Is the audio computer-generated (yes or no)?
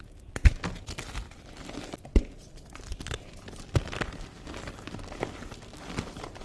no